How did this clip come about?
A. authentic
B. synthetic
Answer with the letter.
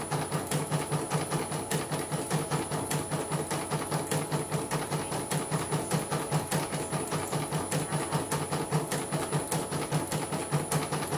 A